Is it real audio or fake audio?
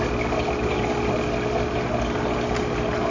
real